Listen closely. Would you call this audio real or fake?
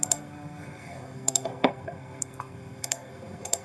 fake